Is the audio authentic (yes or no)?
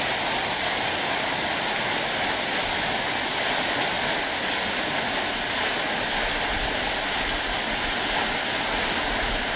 yes